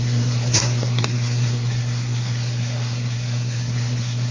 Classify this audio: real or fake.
fake